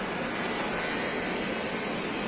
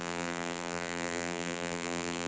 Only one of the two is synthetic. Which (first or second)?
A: second